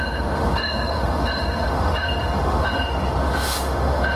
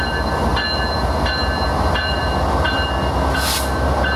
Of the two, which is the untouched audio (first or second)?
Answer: second